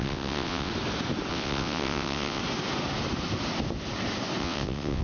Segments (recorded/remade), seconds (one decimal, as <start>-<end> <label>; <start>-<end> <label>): 0.0-0.7 remade; 0.7-1.3 recorded; 1.3-2.4 remade; 2.4-4.4 recorded; 4.4-5.0 remade